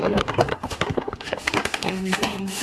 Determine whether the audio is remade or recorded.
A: remade